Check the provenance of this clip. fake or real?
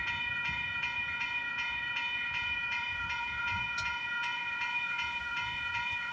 fake